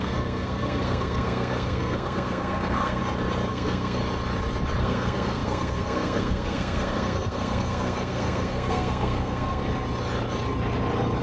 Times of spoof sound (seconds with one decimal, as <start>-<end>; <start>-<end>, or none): 0.0-3.0; 3.5-4.0; 4.8-9.6